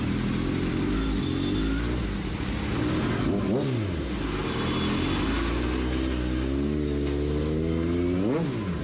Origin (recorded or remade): recorded